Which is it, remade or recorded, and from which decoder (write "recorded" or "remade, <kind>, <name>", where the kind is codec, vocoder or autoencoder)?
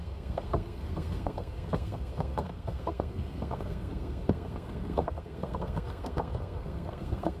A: remade, codec, SNAC